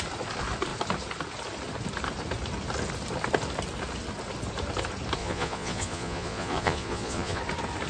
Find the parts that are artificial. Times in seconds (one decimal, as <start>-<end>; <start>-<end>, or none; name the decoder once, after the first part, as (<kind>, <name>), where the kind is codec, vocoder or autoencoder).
5.2-7.4 (vocoder, Vocos)